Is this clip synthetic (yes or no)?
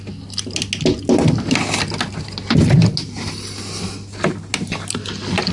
no